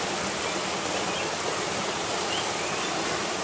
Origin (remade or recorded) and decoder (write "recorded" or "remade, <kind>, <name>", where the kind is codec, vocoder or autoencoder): recorded